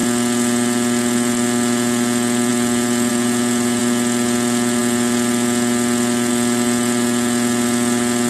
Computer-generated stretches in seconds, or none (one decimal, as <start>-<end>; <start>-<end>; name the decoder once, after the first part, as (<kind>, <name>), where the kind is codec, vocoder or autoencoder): 3.1-3.8 (vocoder, Vocos)